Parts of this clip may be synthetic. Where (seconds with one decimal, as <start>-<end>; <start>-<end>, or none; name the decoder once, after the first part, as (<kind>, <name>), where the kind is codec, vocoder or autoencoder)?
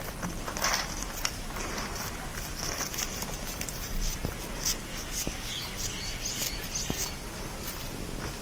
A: 4.9-5.5 (codec, DAC)